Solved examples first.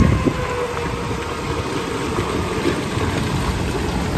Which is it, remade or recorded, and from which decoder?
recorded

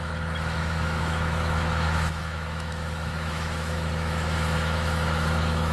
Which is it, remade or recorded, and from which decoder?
remade, autoencoder, DAC-VAE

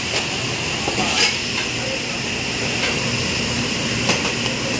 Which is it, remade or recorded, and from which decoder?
recorded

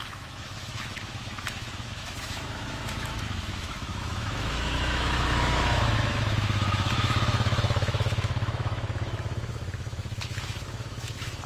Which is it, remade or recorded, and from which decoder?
remade, autoencoder, DAC-VAE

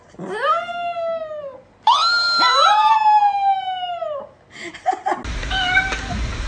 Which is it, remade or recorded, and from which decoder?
recorded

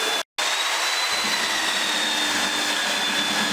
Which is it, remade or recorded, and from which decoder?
recorded